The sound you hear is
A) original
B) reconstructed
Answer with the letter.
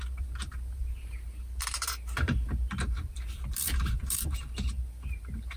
B